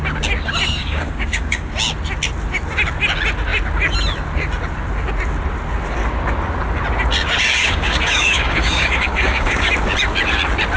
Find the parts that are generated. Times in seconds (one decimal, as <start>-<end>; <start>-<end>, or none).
0.8-1.7; 7.6-9.7